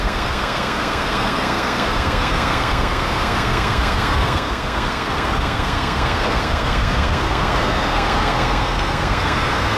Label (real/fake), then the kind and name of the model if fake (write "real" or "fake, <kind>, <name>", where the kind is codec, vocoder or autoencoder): fake, codec, SNAC